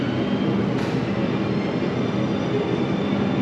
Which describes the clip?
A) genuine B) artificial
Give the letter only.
A